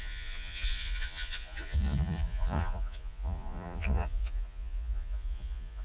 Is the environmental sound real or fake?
fake